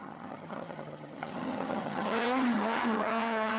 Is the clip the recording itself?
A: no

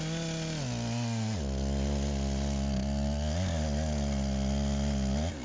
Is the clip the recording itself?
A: yes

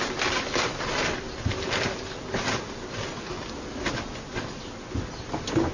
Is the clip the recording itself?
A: yes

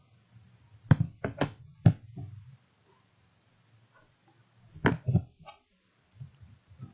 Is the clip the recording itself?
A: yes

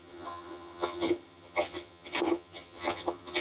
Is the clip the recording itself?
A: no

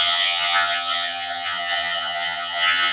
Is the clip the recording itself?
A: no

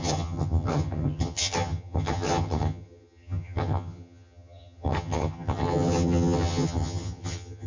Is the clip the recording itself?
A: no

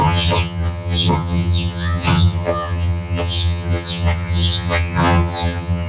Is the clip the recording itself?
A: no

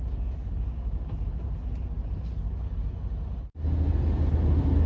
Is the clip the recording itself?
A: yes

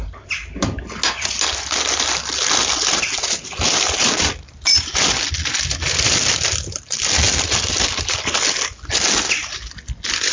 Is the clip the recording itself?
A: yes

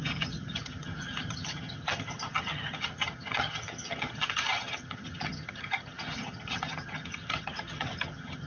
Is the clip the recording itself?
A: no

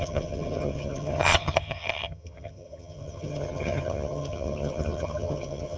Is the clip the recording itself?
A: no